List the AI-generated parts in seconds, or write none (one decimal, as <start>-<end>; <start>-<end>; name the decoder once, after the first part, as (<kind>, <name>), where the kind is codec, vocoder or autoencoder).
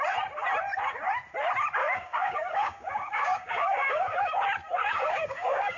1.8-4.3 (codec, DAC); 4.8-5.8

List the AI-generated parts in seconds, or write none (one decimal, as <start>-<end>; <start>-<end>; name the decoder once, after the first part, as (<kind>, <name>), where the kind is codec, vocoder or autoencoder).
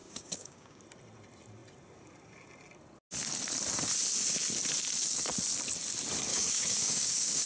0.0-0.8 (codec, DAC); 6.3-7.5